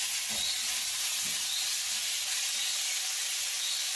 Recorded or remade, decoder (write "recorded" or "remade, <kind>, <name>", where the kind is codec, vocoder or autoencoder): recorded